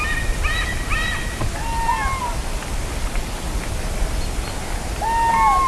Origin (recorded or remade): recorded